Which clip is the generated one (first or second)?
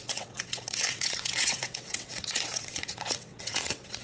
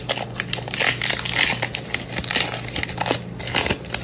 first